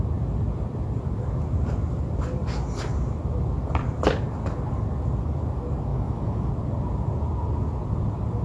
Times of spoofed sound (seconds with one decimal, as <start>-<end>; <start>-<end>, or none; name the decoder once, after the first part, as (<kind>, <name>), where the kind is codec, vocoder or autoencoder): 5.9-6.5 (autoencoder, DAC-VAE)